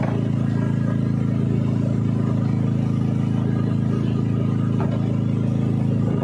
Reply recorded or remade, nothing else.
recorded